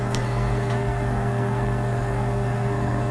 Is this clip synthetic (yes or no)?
yes